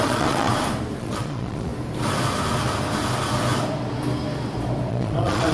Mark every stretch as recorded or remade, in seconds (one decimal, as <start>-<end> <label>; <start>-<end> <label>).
0.0-0.5 remade; 0.5-1.0 recorded; 1.0-1.7 remade; 1.7-4.9 recorded; 4.9-5.5 remade